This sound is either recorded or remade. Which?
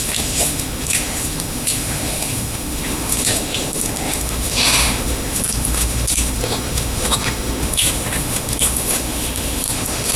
remade